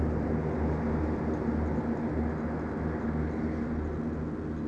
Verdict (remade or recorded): recorded